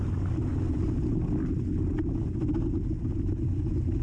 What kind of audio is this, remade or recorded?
recorded